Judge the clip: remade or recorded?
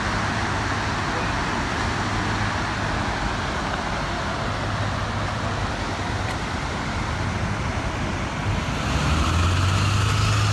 recorded